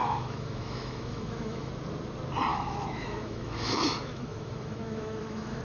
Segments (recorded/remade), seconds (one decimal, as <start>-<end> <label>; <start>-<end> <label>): 0.0-1.7 remade; 1.7-2.5 recorded; 2.5-5.6 remade